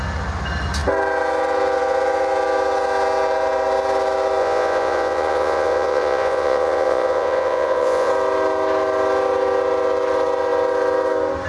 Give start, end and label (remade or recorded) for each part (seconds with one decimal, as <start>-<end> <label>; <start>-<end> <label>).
0.0-4.4 recorded; 4.4-8.1 remade; 8.1-11.5 recorded